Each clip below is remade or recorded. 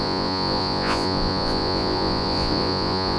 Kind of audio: remade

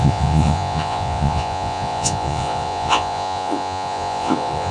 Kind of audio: remade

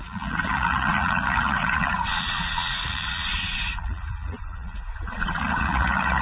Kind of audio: remade